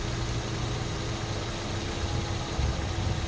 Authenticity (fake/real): real